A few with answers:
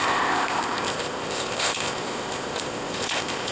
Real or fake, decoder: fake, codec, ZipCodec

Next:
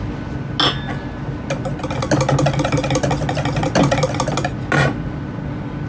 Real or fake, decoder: real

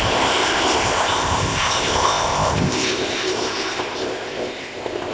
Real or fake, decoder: fake, codec, ZipCodec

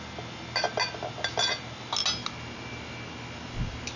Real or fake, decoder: real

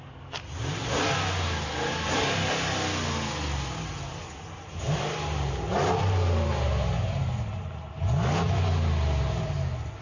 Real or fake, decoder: real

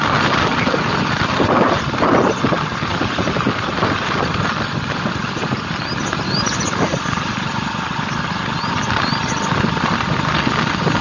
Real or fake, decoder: real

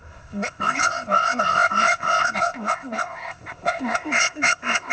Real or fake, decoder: fake, codec, ZipCodec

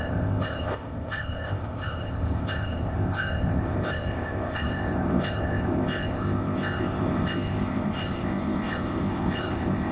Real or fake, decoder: fake, codec, ZipCodec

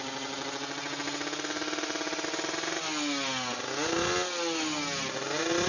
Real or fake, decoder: real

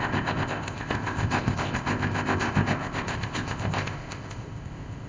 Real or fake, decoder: fake, codec, ZipCodec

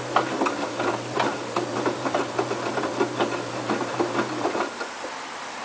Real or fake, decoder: real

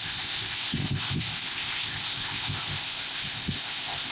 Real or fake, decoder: fake, codec, ZipCodec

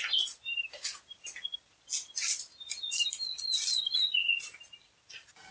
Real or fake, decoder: real